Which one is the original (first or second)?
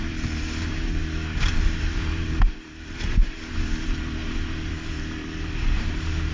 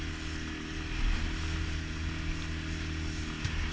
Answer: second